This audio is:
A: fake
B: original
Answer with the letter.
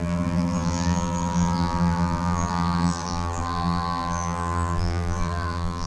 A